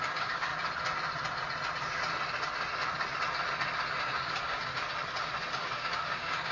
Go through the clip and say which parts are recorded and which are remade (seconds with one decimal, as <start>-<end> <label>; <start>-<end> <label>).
0.0-0.5 remade; 0.5-4.0 recorded; 4.0-4.7 remade; 4.7-5.5 recorded; 5.5-6.5 remade